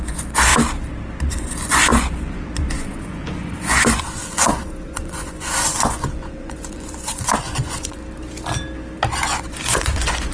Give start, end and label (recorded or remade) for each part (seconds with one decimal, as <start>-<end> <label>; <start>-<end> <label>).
0.0-0.5 remade; 0.5-1.3 recorded; 1.3-8.0 remade; 8.0-9.3 recorded; 9.3-10.3 remade